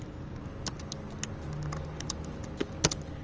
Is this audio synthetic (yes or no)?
no